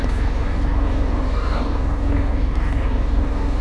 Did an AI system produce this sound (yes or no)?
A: yes